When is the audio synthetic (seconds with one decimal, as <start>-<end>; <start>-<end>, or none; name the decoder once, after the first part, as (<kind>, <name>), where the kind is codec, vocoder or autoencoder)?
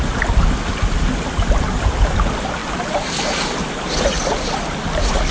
none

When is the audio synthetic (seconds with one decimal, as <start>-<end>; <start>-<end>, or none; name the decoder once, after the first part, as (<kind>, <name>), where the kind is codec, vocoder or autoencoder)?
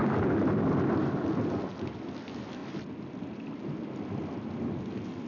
none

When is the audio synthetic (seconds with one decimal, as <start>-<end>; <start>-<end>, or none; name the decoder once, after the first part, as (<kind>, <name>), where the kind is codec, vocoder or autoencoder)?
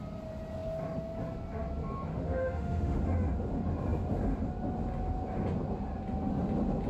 2.1-3.0 (autoencoder, DAC-VAE)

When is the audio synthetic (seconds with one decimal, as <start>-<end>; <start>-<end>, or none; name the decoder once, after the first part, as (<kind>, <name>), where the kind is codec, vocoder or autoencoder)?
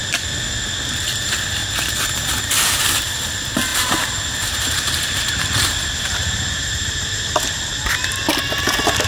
1.6-3.3 (vocoder, BigVGAN v2); 3.7-6.7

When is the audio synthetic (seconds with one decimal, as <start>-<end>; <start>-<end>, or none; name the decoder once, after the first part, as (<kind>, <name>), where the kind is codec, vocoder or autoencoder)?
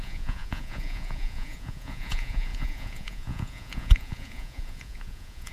0.0-5.5 (vocoder, Vocos)